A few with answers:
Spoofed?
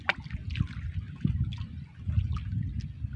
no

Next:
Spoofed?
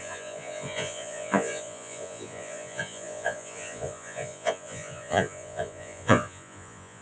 yes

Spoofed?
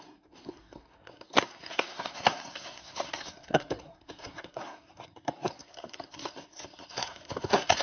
yes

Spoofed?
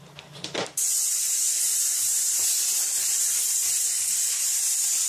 no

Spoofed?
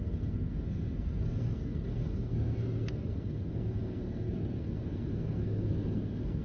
yes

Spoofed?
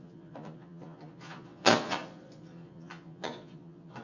yes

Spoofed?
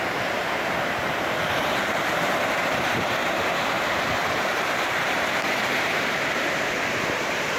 yes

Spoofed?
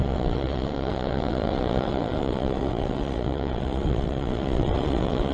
yes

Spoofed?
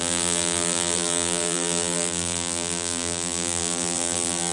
yes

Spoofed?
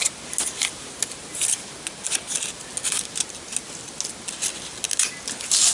no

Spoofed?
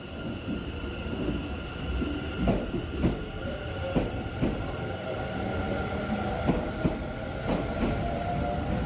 no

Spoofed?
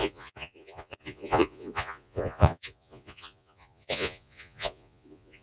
yes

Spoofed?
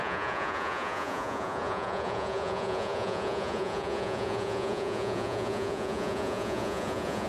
yes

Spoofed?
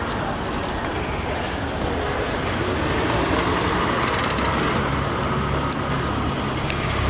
no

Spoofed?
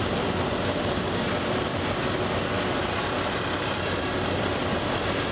no